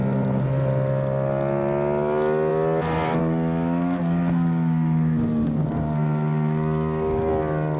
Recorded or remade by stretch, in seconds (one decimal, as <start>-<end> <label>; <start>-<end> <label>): 0.0-3.2 recorded; 3.2-7.3 remade; 7.3-7.8 recorded